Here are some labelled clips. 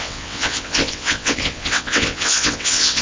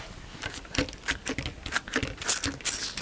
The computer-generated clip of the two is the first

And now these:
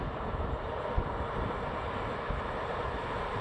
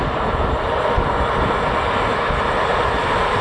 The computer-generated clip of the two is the first